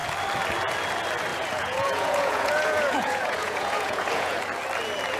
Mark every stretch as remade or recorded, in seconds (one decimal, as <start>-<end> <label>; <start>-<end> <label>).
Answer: 0.0-1.3 recorded; 1.3-4.4 remade; 4.4-5.2 recorded